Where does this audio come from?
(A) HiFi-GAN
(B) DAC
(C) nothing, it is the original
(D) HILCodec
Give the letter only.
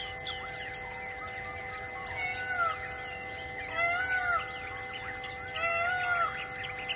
C